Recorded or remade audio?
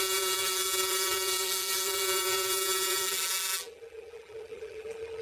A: remade